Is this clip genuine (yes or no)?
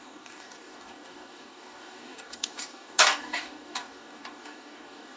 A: no